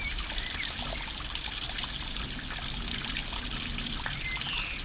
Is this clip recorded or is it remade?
recorded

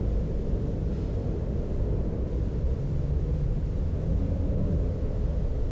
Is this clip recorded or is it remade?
remade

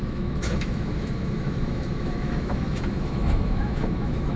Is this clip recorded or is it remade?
remade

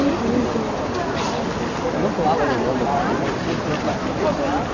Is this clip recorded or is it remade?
recorded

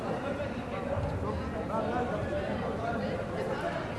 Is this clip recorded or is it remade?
remade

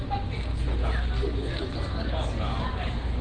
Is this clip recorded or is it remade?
recorded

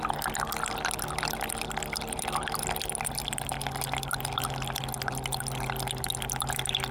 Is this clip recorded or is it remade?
recorded